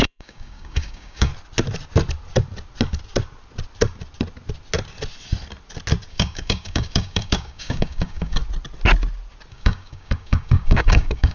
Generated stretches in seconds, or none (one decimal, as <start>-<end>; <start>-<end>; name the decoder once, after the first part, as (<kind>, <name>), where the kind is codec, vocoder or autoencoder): 0.0-1.3 (codec, DAC); 6.1-8.4; 9.5-11.3